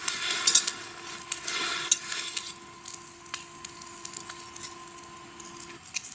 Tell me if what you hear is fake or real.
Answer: real